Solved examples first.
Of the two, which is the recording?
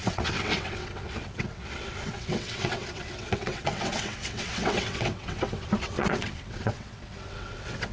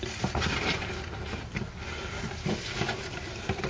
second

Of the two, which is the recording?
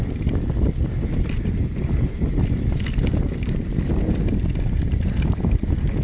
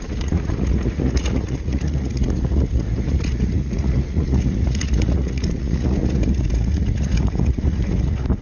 first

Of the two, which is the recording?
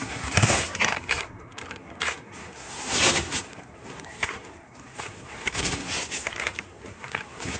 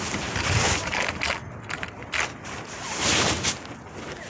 second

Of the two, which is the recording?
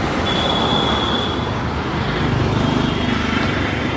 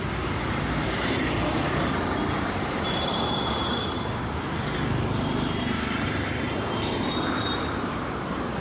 first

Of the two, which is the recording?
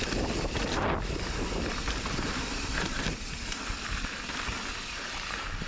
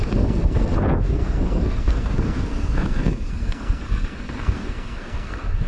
first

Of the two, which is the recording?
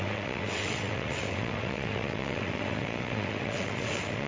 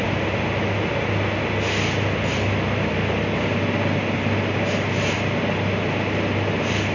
second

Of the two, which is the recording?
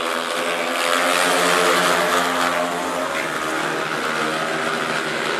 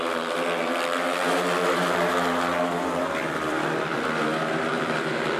first